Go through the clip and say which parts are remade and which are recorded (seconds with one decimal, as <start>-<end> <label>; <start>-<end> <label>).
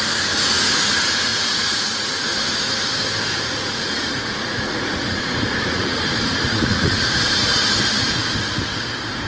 0.0-1.3 recorded; 1.3-2.1 remade; 2.1-3.3 recorded; 3.3-7.6 remade; 7.6-9.3 recorded